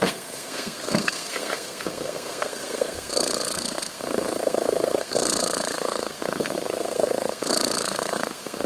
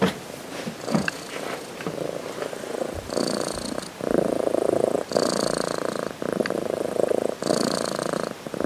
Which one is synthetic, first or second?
first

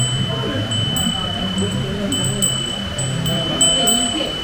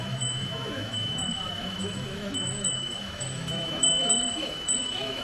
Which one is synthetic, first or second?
second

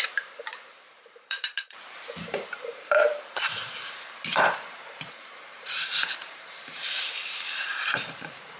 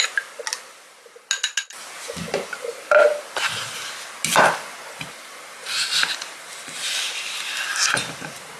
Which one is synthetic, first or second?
first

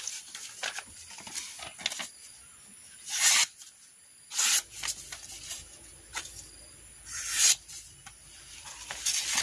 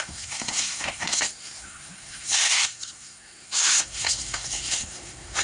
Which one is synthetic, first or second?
second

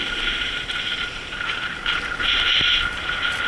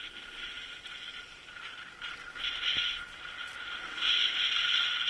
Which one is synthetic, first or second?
first